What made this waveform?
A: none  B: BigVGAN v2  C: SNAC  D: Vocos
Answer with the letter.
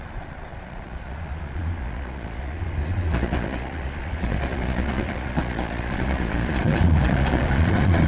D